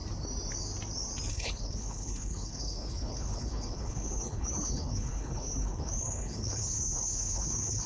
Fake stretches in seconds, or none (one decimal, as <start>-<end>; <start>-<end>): 1.3-7.9